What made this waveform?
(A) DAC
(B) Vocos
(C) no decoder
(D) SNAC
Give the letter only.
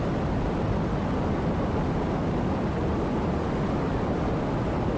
C